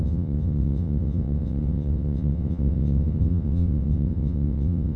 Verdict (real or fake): fake